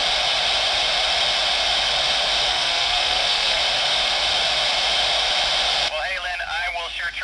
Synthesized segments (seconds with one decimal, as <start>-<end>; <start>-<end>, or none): 2.5-3.6